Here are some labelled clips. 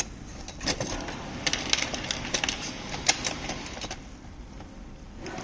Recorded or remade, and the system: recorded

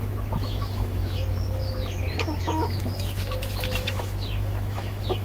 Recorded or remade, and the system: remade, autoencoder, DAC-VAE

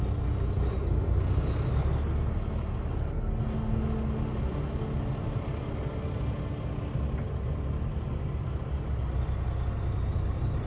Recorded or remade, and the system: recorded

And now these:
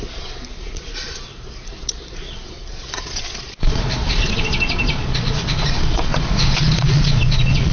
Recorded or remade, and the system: remade, vocoder, Vocos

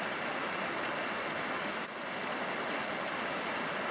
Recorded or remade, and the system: recorded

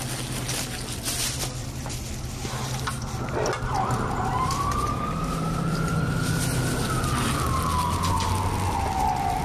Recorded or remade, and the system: recorded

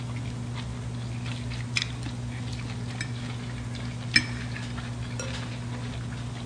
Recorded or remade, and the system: recorded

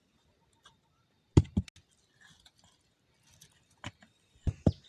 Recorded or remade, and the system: recorded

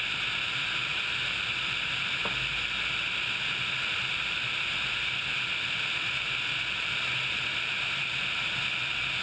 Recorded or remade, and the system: recorded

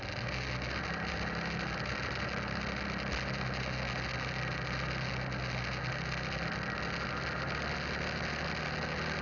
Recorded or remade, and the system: recorded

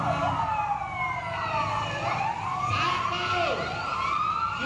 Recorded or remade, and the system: recorded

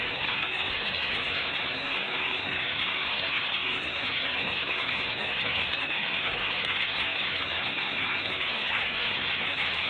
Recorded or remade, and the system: remade, codec, SNAC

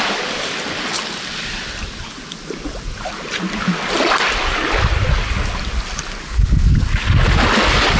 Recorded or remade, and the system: recorded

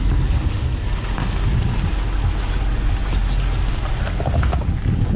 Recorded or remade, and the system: recorded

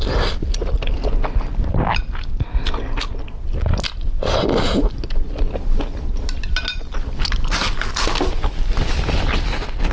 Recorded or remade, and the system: recorded